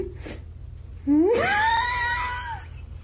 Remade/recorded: recorded